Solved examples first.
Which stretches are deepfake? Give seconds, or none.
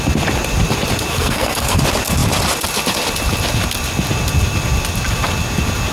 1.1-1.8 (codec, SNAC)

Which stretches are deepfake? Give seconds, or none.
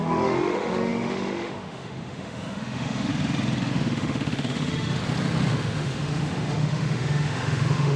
0.0-3.1 (autoencoder, DAC-VAE); 3.7-5.0; 5.5-8.0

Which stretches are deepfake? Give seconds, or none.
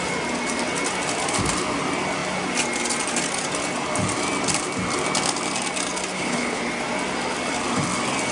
6.1-6.6 (codec, HILCodec)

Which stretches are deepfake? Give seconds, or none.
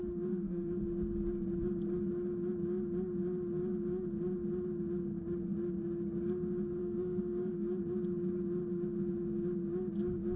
0.0-0.8 (autoencoder, DAC-VAE); 6.8-7.8